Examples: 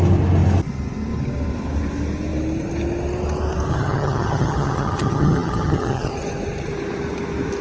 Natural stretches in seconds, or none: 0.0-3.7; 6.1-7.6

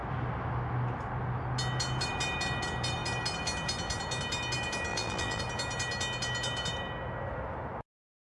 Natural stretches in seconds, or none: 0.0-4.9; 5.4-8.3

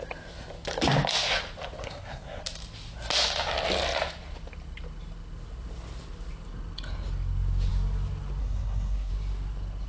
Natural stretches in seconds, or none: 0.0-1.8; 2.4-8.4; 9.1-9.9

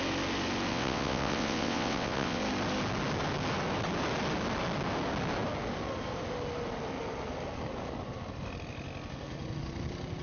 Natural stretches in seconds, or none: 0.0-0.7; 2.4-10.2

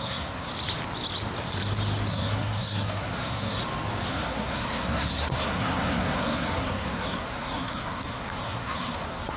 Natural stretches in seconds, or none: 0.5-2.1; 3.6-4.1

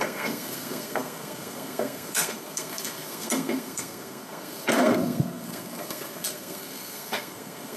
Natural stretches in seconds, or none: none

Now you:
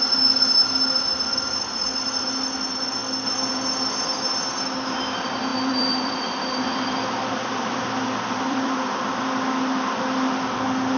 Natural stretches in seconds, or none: 0.0-1.1; 2.2-5.5; 8.9-11.0